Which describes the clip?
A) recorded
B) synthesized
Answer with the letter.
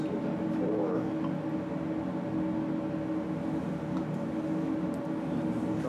A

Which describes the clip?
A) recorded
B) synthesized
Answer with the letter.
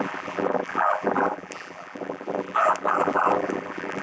B